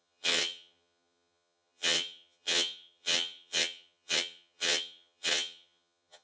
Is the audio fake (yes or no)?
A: yes